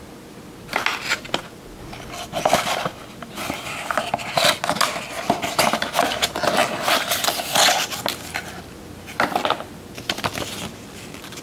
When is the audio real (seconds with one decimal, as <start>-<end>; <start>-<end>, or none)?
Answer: 0.0-11.4